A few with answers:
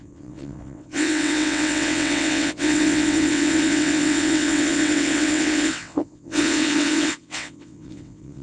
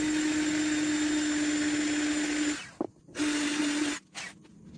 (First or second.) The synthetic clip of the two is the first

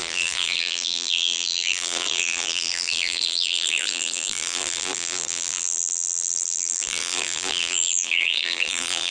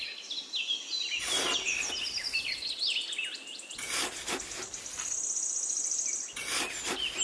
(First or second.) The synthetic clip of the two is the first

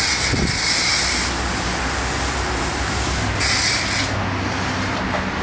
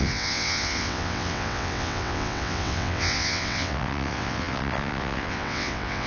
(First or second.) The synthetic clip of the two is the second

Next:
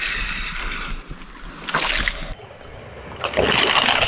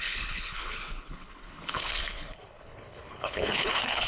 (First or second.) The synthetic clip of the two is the second